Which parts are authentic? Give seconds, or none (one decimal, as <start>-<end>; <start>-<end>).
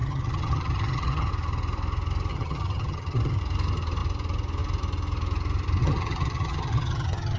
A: 1.3-2.3; 3.4-5.8